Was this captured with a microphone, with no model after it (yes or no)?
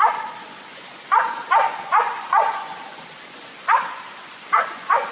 no